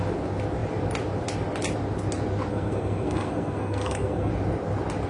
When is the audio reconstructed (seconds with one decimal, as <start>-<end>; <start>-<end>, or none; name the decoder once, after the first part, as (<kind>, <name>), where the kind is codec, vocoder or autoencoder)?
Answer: 2.5-4.3 (codec, SNAC)

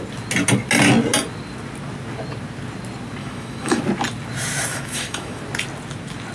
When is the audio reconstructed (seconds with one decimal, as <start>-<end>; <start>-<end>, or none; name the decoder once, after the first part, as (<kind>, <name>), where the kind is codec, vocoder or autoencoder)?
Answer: 3.2-3.8 (autoencoder, DAC-VAE); 4.7-5.4

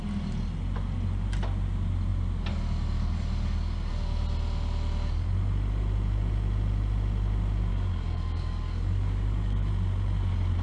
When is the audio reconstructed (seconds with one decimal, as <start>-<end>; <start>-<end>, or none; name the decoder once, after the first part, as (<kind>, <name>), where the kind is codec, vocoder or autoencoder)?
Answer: 7.7-9.7 (codec, DAC)

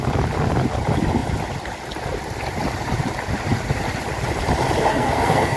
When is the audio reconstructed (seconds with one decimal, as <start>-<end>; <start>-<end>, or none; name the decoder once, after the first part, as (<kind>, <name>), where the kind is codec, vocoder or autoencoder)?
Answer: 4.9-5.6 (codec, SNAC)

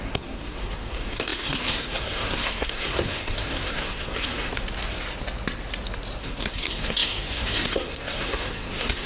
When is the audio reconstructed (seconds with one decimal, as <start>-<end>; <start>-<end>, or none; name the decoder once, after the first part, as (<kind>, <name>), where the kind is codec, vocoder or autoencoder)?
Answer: 0.0-4.5 (codec, SNAC); 6.2-9.1

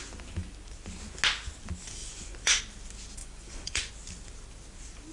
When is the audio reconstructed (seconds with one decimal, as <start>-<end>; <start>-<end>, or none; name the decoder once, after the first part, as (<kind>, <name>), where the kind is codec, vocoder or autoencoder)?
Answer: 2.0-2.6 (vocoder, Vocos); 3.2-3.9